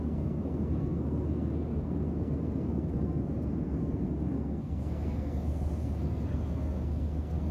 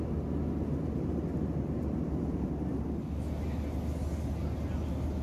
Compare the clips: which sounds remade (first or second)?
first